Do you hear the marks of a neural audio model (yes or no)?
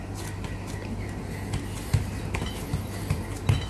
no